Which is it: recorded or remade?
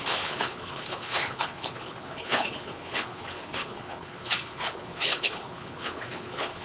remade